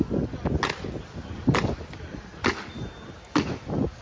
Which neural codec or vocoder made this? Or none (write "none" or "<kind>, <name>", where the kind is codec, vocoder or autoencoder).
none